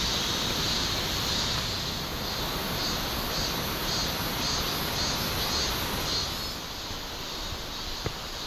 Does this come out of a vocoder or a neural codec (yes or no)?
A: no